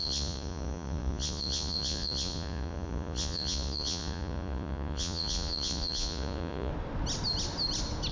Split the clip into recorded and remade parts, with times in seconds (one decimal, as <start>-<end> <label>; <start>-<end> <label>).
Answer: 0.0-6.7 remade; 6.7-8.1 recorded